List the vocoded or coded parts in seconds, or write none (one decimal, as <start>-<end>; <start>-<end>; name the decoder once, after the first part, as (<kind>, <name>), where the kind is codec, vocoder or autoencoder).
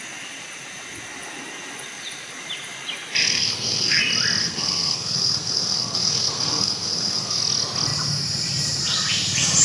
3.2-4.0 (codec, SNAC); 4.4-7.4